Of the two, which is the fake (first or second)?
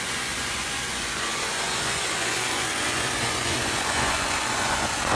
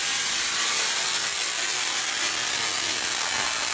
first